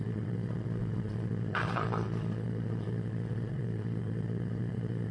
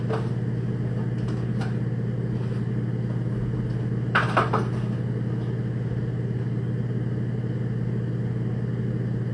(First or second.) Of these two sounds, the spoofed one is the first